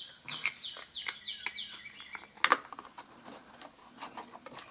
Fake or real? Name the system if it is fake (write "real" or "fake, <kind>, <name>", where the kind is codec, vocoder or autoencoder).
real